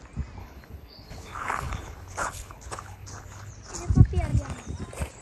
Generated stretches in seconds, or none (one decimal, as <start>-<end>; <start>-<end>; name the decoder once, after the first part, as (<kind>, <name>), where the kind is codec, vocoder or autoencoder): 0.4-3.5 (codec, HILCodec)